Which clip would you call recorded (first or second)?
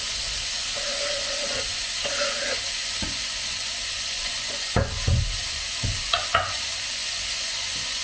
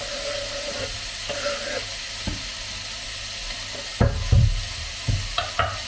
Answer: second